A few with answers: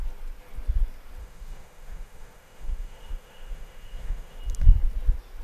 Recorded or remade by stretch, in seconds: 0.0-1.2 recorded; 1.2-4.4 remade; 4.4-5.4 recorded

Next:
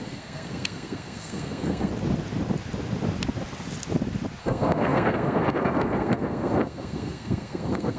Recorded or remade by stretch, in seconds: 0.0-1.9 remade; 1.9-4.4 recorded; 4.4-8.0 remade

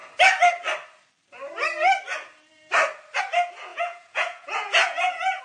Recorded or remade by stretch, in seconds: 0.0-3.7 recorded; 3.7-5.4 remade

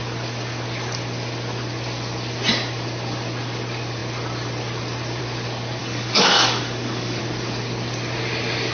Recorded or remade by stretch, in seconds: 0.0-5.8 recorded; 5.8-7.2 remade; 7.2-8.7 recorded

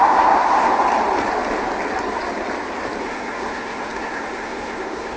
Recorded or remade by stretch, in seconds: 0.0-0.7 remade; 0.7-3.0 recorded; 3.0-5.2 remade